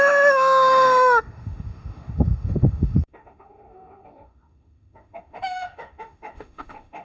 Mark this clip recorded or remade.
remade